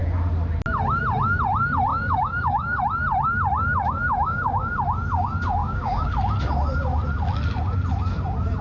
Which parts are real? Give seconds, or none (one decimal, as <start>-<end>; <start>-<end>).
0.0-1.9; 2.8-4.2; 4.7-5.6; 6.1-8.6